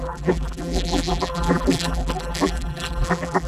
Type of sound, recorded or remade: remade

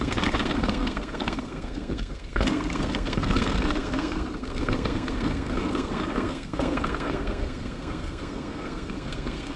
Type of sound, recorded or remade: remade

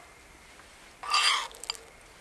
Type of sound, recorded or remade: recorded